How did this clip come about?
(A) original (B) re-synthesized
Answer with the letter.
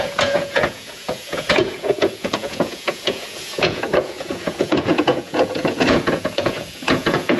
B